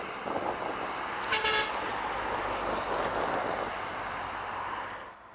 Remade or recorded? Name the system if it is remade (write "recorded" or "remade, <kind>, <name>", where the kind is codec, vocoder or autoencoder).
recorded